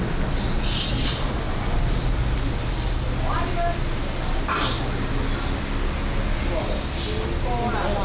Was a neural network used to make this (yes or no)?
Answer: no